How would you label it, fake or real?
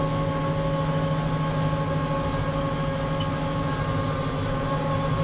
real